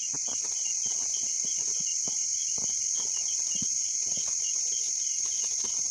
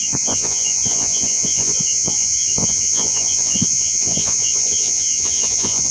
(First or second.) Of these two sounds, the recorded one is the first